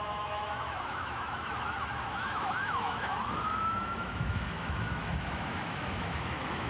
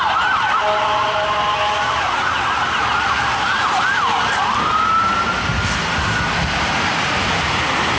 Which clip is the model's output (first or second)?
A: first